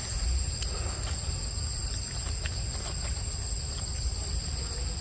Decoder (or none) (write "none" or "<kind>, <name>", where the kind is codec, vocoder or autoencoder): none